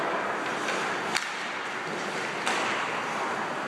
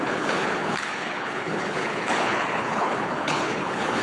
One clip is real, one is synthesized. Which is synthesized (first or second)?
second